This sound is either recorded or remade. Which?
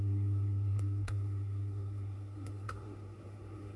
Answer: remade